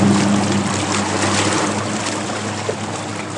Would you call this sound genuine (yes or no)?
yes